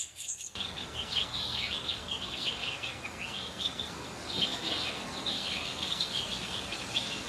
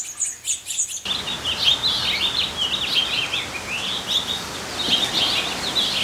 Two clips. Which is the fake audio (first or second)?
first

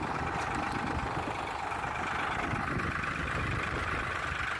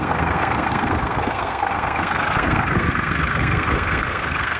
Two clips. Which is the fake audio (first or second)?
second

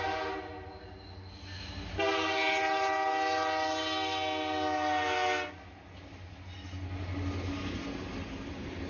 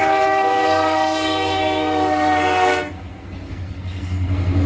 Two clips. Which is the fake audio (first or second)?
second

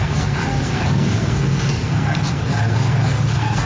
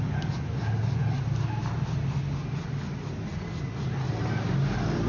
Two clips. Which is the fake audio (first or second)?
first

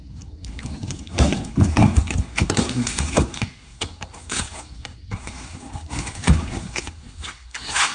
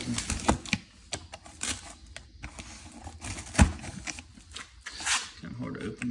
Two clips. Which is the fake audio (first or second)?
first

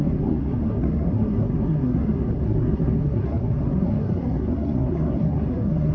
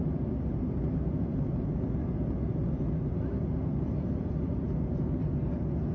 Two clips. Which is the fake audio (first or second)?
first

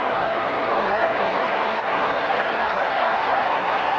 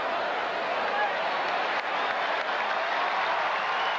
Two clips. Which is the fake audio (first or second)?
first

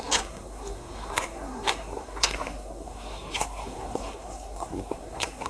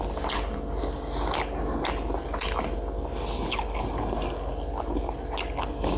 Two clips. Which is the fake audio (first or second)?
first